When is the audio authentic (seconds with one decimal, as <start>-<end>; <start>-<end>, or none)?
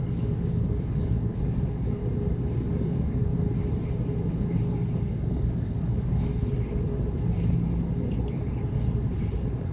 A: 2.0-2.7; 3.3-5.0; 6.3-9.7